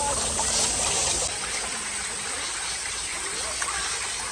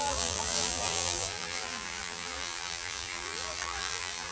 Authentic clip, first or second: first